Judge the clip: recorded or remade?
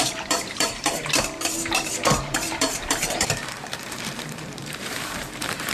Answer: remade